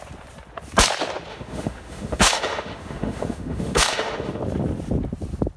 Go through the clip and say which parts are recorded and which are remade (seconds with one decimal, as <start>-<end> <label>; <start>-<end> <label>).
0.0-1.3 recorded; 1.3-4.4 remade; 4.4-5.6 recorded